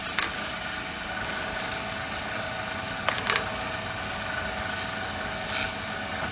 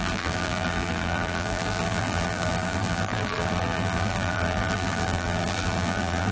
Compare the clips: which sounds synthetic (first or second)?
second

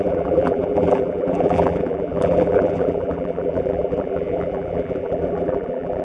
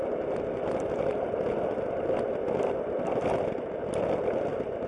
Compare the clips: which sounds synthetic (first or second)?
first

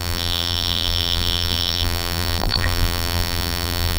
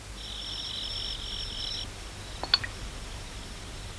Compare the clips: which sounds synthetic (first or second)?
first